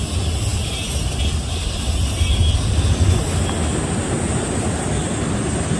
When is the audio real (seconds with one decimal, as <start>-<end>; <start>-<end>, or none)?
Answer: 0.0-5.8